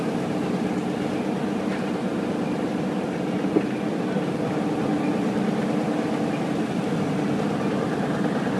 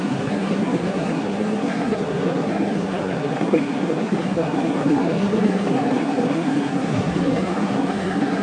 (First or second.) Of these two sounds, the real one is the first